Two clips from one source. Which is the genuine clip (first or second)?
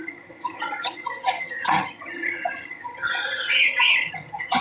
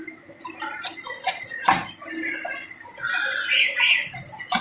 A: second